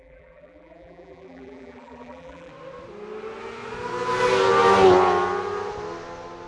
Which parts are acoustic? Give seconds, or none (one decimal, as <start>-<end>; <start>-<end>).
2.5-6.5